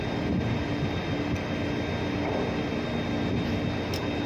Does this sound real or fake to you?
real